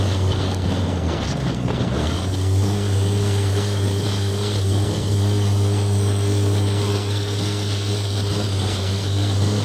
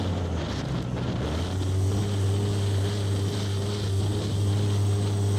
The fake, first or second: first